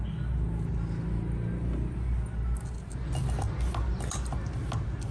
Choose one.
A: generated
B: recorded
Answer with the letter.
B